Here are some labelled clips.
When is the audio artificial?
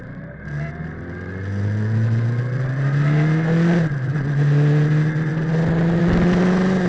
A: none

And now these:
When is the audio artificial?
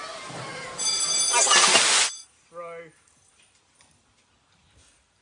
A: none